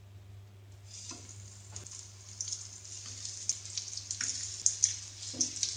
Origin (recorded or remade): recorded